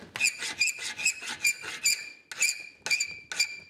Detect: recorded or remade recorded